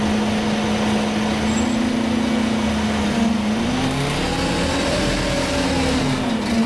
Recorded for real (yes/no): yes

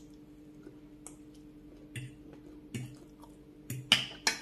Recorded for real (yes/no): yes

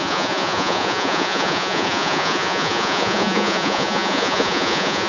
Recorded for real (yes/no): no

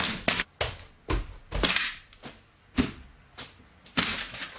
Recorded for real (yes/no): yes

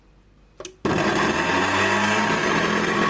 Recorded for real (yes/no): yes